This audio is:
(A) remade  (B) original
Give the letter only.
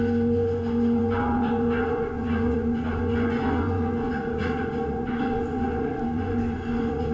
A